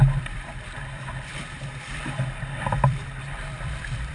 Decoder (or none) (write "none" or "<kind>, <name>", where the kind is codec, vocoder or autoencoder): vocoder, BigVGAN v2